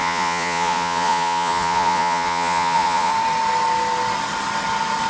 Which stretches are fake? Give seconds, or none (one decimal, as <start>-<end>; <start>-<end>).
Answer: 0.0-3.1